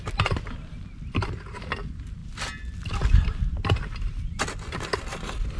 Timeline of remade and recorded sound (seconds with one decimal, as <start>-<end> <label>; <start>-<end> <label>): 0.0-5.6 recorded